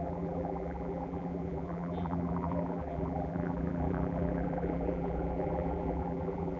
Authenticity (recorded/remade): remade